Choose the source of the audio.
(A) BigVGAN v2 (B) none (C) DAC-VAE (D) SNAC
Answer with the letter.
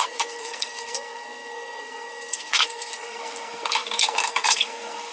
D